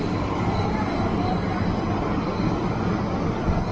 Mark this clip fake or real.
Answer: real